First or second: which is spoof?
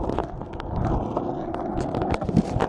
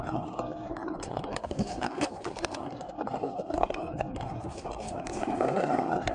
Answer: second